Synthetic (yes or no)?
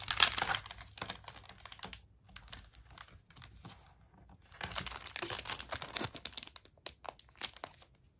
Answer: no